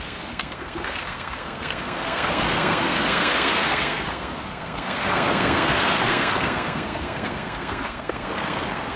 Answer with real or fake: fake